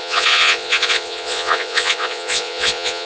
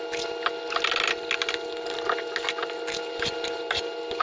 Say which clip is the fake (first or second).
first